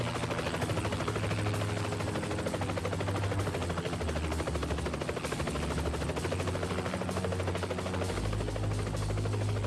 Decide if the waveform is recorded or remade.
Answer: recorded